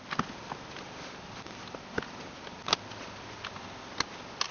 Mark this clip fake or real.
real